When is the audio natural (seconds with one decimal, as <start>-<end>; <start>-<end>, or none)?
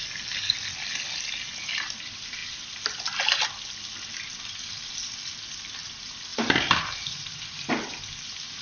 0.0-8.6